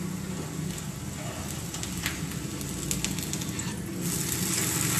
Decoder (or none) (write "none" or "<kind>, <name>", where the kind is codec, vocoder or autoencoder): none